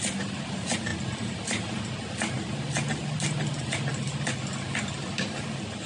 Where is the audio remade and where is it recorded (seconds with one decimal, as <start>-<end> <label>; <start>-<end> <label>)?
0.0-5.9 recorded